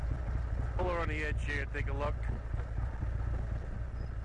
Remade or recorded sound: recorded